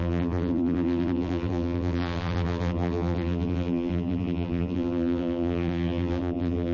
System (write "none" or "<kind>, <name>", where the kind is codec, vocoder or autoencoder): vocoder, BigVGAN v2